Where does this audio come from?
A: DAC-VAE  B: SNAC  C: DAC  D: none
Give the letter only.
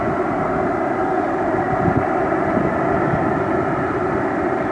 D